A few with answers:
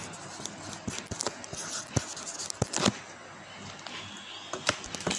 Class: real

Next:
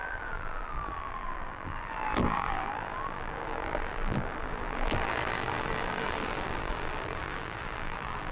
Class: fake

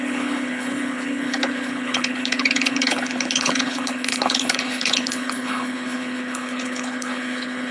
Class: fake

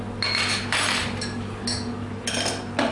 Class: real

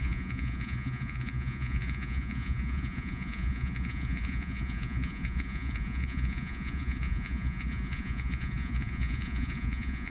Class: fake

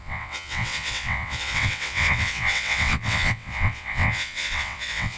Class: fake